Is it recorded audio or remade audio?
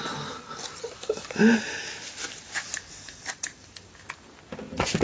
recorded